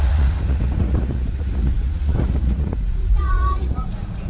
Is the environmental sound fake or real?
fake